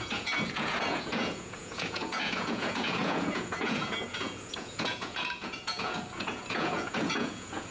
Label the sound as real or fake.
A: fake